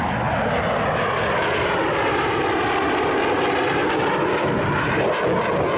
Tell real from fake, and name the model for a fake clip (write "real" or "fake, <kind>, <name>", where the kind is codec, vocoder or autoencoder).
real